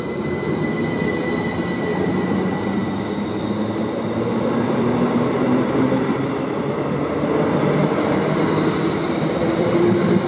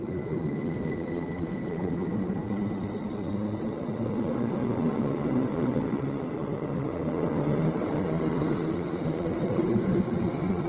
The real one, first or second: first